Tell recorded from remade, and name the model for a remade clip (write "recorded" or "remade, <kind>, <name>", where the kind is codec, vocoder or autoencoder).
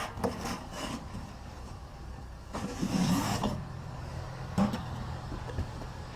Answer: remade, codec, DAC